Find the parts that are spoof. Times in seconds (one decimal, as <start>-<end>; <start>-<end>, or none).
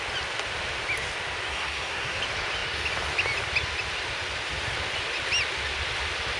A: 1.5-2.2